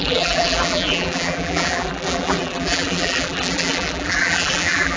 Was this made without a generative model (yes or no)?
no